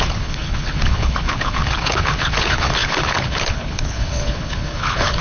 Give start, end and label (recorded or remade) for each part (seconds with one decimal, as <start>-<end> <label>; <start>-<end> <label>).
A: 0.0-5.2 remade